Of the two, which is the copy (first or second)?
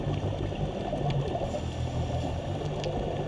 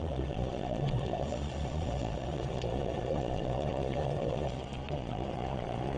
second